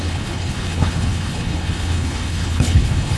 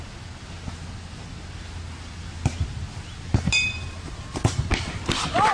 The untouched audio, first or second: second